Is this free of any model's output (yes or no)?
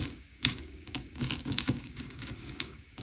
no